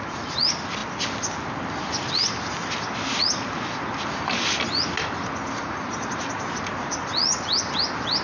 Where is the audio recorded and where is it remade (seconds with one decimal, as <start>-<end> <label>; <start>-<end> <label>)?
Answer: 0.0-8.2 recorded